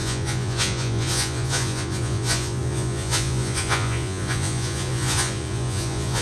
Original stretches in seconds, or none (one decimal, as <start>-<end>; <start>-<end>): none